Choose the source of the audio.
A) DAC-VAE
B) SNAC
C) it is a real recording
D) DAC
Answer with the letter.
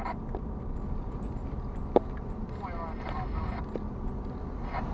C